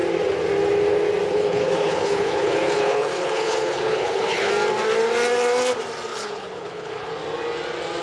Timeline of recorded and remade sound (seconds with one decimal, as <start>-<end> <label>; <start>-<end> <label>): 0.0-1.3 recorded; 1.3-4.5 remade; 4.5-6.1 recorded; 6.1-7.1 remade; 7.1-8.0 recorded